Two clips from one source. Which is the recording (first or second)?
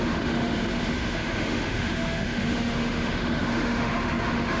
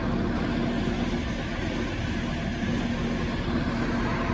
second